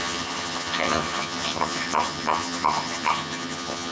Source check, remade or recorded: remade